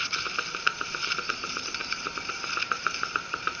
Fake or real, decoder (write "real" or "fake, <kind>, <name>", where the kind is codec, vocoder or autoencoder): fake, vocoder, BigVGAN v2